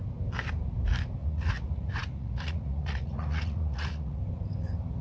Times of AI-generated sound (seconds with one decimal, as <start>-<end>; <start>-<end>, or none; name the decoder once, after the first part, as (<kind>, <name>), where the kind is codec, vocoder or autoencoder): 1.2-4.2 (vocoder, Vocos)